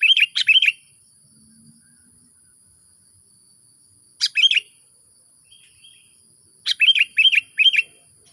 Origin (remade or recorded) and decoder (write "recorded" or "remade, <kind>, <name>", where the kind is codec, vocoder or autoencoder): recorded